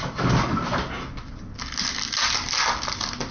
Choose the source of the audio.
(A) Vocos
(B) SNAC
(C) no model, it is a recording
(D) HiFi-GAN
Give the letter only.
C